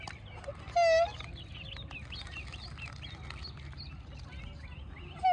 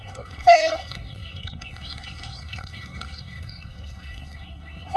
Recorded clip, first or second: first